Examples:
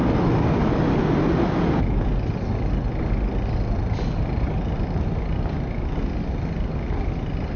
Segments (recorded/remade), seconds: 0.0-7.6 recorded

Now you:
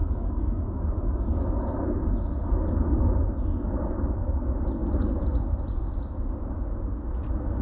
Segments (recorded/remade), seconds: 0.0-1.5 remade; 1.5-7.6 recorded

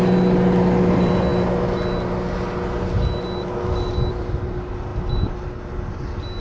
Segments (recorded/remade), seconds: 0.0-6.4 recorded